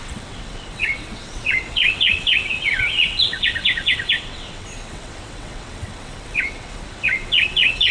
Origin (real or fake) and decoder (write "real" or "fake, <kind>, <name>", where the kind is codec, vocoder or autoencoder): fake, vocoder, WaveNeXt